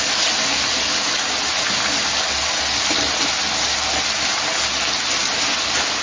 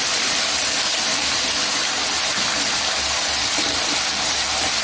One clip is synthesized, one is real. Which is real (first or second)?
first